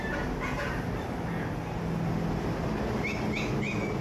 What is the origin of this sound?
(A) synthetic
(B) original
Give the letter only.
B